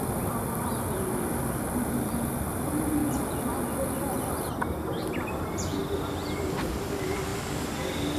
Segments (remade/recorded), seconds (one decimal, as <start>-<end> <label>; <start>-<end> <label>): 0.0-3.0 remade; 3.0-4.0 recorded; 4.0-5.8 remade; 5.8-6.6 recorded; 6.6-7.3 remade; 7.3-8.2 recorded